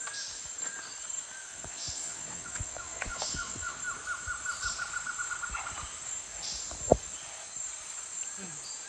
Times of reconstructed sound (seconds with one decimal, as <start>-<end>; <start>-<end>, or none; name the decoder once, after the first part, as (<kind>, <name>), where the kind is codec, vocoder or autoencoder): 1.5-3.8 (vocoder, WaveNeXt)